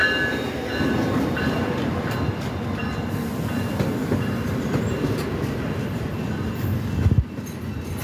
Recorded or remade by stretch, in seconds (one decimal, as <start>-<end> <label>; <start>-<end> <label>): 0.0-4.0 recorded; 4.0-4.8 remade; 4.8-8.0 recorded